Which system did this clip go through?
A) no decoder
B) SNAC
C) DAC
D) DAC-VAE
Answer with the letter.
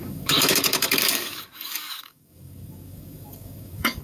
C